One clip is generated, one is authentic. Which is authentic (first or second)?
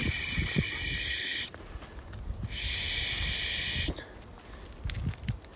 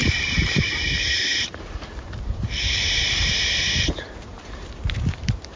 first